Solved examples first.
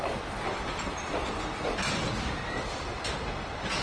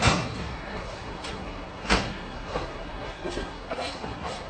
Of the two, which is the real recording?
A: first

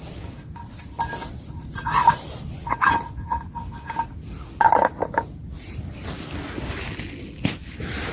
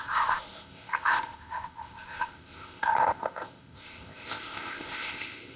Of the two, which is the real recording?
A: first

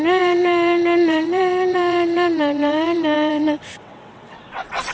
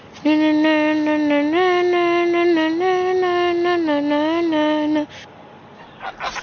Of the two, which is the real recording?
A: second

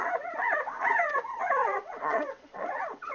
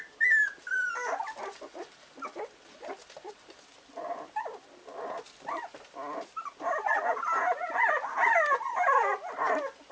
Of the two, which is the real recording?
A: second